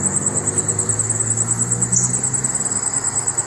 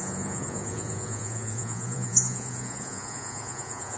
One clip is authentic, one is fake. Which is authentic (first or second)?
first